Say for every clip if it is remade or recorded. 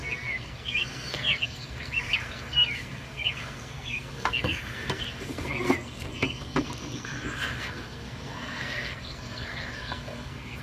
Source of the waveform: remade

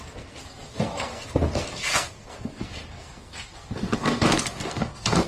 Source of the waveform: remade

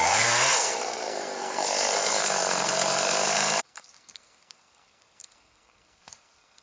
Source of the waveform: remade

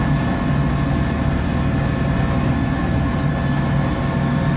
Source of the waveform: recorded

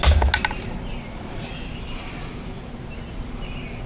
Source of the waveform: recorded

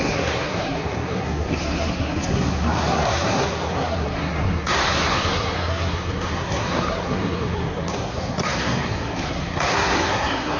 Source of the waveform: remade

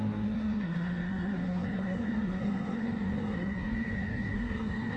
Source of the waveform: remade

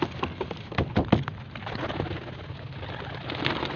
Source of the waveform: recorded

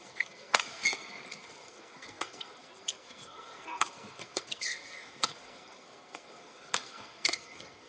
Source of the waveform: remade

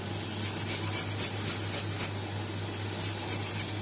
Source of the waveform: recorded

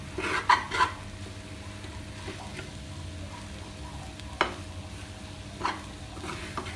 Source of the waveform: recorded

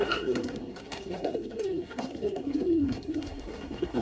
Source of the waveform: remade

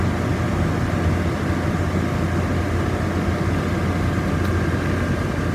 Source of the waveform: recorded